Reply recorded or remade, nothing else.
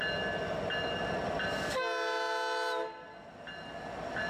recorded